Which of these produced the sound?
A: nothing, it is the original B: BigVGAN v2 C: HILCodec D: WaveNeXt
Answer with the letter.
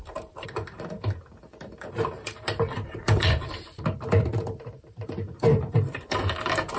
B